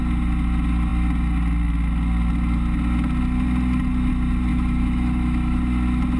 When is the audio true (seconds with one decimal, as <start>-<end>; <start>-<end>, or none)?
0.0-4.5; 5.6-6.2